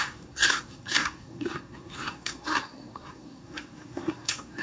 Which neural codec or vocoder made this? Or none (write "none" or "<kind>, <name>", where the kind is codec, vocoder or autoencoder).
codec, SNAC